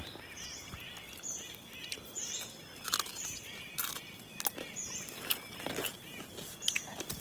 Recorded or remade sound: recorded